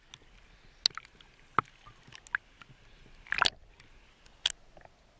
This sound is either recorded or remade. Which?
recorded